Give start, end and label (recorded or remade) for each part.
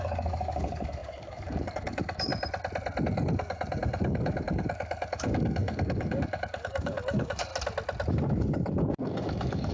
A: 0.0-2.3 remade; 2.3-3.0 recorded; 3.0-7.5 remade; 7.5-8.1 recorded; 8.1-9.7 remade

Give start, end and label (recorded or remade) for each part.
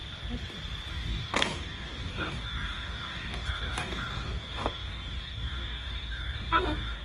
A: 0.0-0.9 recorded; 0.9-7.0 remade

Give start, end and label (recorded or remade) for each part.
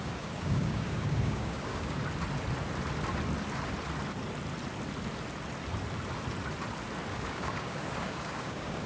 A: 0.0-2.0 remade; 2.0-7.1 recorded; 7.1-8.9 remade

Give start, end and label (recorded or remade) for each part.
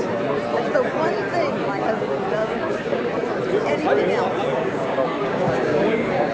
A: 0.0-2.4 recorded; 2.4-3.1 remade; 3.1-4.5 recorded; 4.5-6.3 remade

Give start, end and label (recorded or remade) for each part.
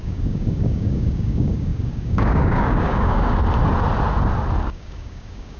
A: 0.0-3.4 remade; 3.4-4.6 recorded; 4.6-5.6 remade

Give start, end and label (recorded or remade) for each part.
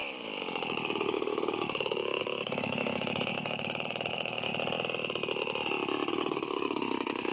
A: 0.0-4.5 remade; 4.5-6.1 recorded; 6.1-7.3 remade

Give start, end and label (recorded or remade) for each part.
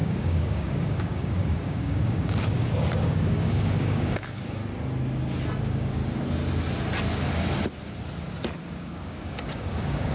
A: 0.0-4.6 remade; 4.6-5.6 recorded; 5.6-6.0 remade; 6.0-8.6 recorded; 8.6-10.1 remade